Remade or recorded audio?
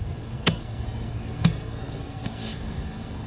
remade